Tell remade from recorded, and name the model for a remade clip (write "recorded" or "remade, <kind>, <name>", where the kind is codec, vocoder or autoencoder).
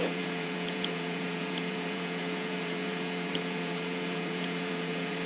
remade, vocoder, Vocos